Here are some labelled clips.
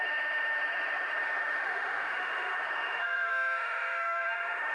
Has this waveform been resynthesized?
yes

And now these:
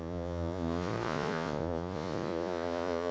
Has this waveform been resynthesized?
yes